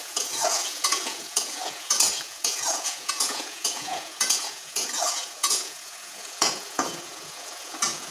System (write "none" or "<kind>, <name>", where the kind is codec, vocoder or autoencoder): vocoder, Vocos